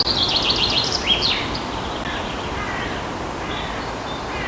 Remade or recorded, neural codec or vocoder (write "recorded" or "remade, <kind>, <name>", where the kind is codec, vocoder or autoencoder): recorded